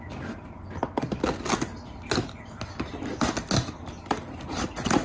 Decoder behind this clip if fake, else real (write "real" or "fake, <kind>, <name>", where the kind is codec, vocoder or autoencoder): real